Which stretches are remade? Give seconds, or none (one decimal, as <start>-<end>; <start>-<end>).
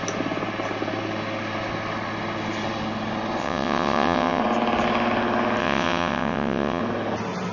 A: 3.4-4.4; 5.6-6.8